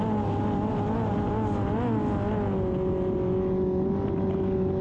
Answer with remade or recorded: recorded